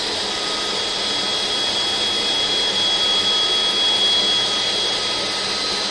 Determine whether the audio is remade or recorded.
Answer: recorded